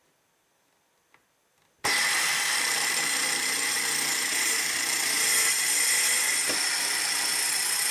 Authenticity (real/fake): real